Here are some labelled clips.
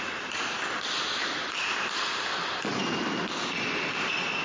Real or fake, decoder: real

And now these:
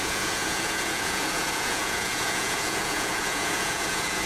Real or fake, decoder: fake, vocoder, Vocos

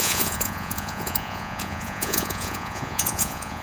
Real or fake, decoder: fake, vocoder, Vocos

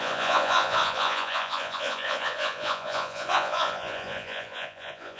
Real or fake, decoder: fake, vocoder, Vocos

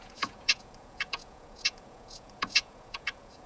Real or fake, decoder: fake, vocoder, Vocos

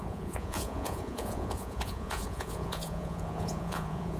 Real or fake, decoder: fake, vocoder, Vocos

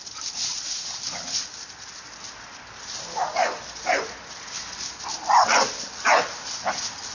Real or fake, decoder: real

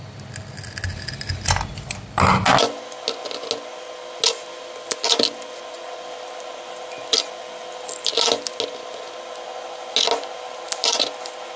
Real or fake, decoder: real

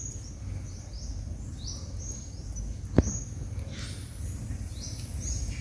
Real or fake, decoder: real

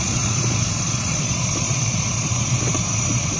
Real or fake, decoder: fake, vocoder, Vocos